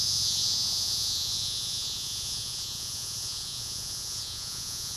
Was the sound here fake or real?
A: fake